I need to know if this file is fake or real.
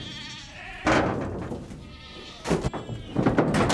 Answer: real